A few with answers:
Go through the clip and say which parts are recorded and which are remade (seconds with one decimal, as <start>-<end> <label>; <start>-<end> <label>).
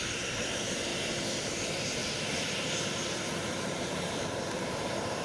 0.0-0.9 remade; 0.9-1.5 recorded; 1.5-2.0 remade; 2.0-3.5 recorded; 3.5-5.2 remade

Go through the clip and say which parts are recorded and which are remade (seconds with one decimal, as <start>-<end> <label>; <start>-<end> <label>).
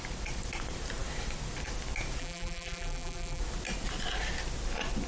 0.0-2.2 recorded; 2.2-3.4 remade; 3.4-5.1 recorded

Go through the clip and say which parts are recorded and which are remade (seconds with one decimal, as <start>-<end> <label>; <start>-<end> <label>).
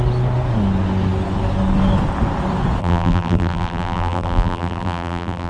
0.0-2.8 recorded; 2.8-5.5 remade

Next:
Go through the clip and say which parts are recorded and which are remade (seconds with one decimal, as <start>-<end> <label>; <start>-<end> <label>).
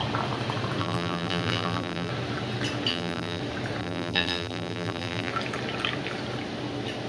0.0-0.8 recorded; 0.8-2.1 remade; 2.1-2.9 recorded; 2.9-3.4 remade; 3.4-3.8 recorded; 3.8-5.3 remade; 5.3-7.1 recorded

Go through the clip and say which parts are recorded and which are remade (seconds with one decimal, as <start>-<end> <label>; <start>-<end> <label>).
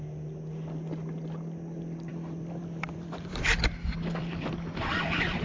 0.0-2.1 recorded; 2.1-5.4 remade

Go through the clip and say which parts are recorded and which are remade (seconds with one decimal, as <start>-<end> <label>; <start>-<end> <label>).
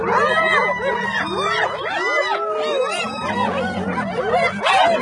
0.0-5.0 recorded